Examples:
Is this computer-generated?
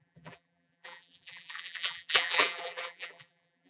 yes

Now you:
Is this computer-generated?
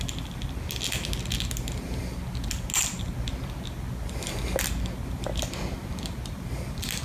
no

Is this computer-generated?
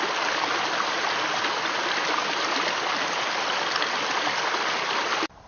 no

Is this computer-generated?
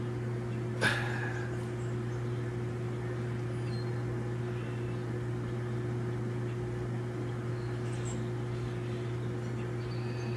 no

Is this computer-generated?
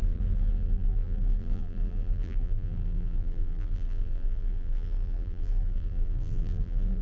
yes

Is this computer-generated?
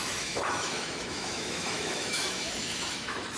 yes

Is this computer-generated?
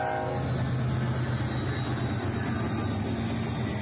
no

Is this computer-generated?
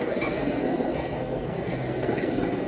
yes